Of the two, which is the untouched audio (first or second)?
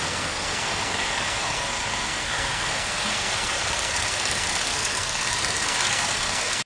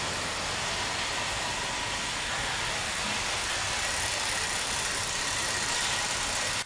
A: second